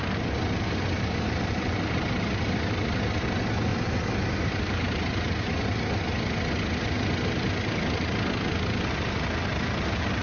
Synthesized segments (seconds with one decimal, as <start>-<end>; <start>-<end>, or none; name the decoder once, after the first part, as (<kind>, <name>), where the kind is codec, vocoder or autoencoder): none